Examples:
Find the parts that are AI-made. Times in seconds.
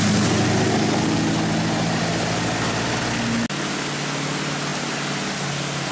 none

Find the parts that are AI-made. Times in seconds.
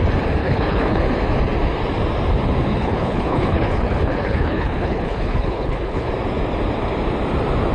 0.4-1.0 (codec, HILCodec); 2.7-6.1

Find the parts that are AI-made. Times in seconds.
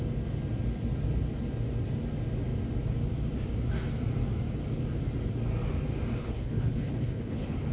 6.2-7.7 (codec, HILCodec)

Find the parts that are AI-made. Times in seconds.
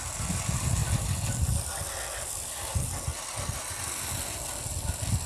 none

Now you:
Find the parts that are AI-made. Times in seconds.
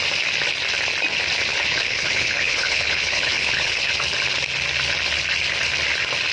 1.5-3.9 (codec, HILCodec)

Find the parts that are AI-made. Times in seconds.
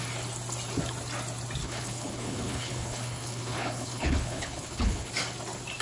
1.6-5.1 (codec, HILCodec)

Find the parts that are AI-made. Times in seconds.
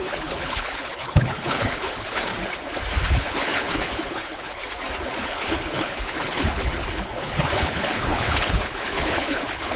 0.0-2.3 (codec, HILCodec); 3.1-4.6; 5.2-9.8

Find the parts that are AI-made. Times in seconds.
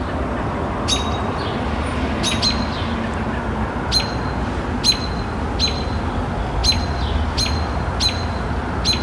none